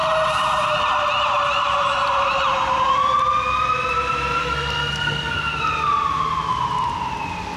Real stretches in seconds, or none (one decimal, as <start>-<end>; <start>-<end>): 0.0-4.4; 5.6-7.6